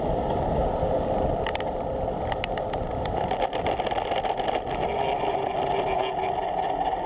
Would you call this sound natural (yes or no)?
yes